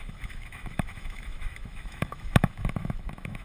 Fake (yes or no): yes